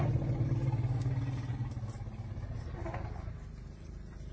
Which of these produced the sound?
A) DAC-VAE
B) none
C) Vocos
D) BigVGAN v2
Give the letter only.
B